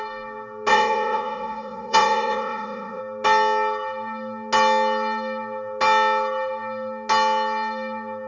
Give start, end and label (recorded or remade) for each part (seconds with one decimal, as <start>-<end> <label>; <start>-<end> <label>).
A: 0.0-0.7 recorded; 0.7-3.0 remade; 3.0-8.3 recorded